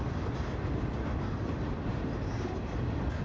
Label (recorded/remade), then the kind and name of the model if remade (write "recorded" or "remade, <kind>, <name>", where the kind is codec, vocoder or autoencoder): recorded